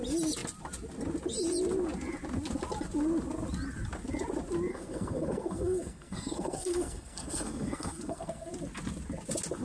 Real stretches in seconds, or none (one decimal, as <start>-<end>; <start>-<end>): 0.0-4.7; 8.5-9.6